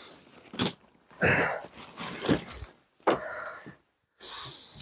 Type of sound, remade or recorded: recorded